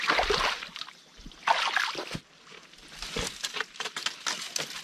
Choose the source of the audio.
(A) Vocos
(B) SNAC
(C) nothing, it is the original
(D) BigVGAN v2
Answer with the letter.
C